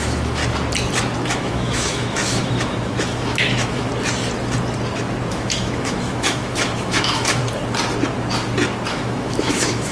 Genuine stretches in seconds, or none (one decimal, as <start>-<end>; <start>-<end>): 0.4-1.3; 3.9-5.3; 7.4-8.9